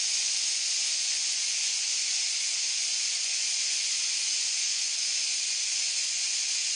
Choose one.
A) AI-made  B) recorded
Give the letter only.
A